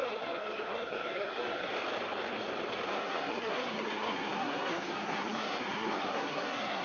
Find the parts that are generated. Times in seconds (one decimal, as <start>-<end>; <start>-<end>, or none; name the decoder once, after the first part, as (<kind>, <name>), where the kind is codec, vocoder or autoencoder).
0.0-1.7 (codec, SNAC); 2.9-6.8